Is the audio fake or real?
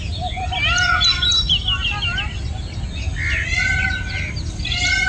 real